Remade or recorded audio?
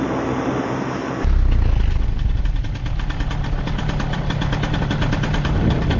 recorded